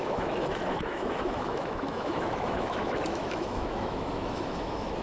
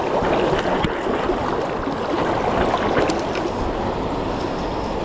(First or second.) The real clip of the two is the second